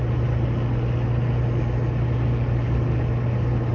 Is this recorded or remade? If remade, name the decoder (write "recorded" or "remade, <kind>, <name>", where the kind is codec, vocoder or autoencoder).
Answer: recorded